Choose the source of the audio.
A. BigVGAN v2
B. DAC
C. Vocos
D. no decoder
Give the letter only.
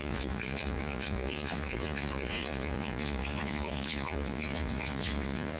C